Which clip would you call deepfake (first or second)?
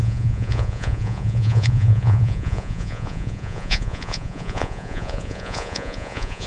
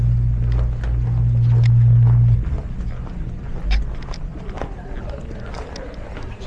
first